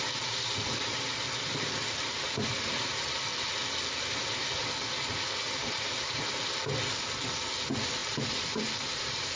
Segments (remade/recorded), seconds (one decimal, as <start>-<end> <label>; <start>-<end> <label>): 0.0-9.4 recorded